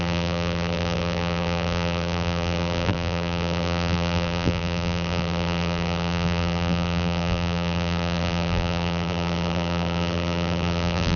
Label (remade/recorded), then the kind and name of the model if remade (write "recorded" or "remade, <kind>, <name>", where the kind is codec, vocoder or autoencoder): remade, vocoder, BigVGAN v2